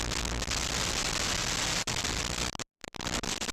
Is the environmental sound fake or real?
real